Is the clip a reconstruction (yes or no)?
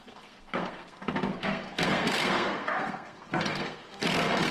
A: yes